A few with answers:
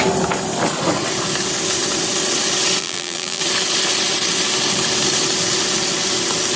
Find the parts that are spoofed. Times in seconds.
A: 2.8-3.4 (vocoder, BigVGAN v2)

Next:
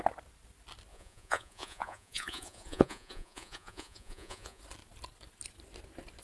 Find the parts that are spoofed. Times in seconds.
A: 0.9-4.6 (vocoder, Vocos)